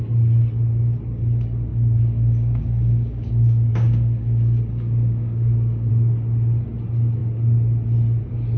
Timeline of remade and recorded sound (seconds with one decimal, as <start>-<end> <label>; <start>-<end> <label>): 0.0-1.7 recorded; 1.7-5.9 remade; 5.9-8.6 recorded